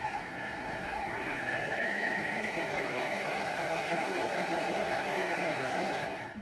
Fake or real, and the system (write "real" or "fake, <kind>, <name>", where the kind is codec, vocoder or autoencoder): fake, codec, SNAC